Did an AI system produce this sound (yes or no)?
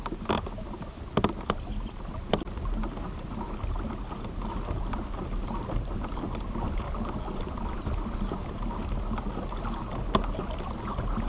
no